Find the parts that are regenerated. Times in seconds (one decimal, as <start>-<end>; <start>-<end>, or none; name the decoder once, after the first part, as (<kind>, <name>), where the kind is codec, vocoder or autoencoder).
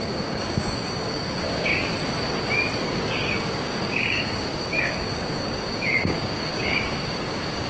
0.0-1.7 (codec, DAC); 2.8-7.7